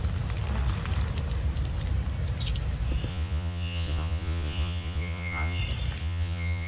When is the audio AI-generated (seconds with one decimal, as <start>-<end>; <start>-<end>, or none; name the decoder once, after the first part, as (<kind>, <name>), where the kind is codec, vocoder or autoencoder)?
3.1-5.6 (vocoder, Vocos); 6.0-6.7